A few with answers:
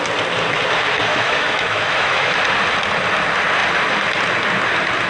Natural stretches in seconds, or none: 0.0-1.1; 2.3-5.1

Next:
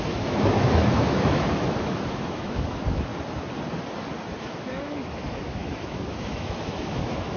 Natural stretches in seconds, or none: 3.1-4.4

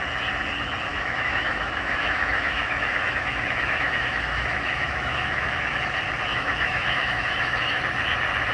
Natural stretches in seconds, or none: 0.0-0.9; 5.6-6.3; 7.8-8.5